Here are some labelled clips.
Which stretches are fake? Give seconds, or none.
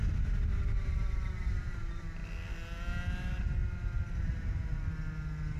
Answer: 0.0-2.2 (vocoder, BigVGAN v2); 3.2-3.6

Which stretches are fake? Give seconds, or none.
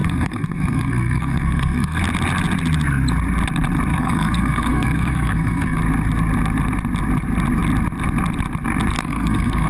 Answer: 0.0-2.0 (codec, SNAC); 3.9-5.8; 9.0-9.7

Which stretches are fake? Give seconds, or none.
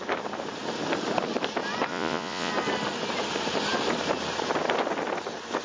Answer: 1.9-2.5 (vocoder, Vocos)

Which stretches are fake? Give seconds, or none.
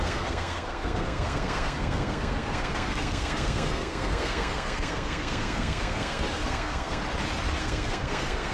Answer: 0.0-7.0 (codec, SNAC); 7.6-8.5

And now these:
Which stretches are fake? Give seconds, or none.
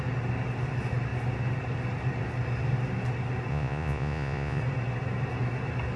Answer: 3.5-4.6 (vocoder, Vocos)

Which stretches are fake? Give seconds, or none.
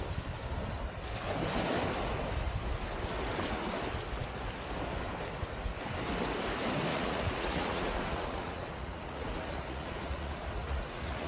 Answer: 6.9-11.3 (vocoder, Vocos)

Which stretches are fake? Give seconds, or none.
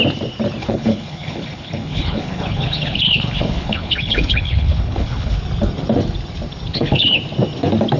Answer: 0.6-5.4 (codec, HILCodec); 6.7-7.2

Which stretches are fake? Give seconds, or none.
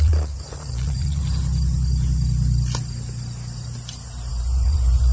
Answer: 0.0-1.2 (vocoder, Vocos); 4.3-5.1